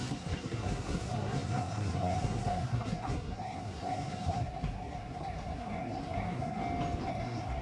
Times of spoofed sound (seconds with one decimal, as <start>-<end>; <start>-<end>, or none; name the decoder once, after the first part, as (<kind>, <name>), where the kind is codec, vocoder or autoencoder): 0.0-6.6 (codec, SNAC); 7.1-7.6